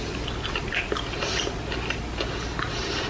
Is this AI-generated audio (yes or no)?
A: no